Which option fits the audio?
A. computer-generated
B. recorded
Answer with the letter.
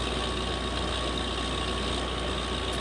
B